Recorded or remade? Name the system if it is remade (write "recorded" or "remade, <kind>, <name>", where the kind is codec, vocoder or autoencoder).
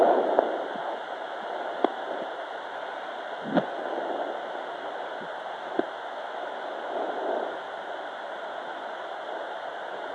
recorded